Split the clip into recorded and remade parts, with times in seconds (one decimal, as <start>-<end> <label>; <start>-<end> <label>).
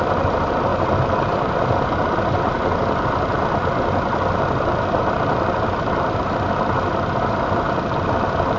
0.0-8.6 recorded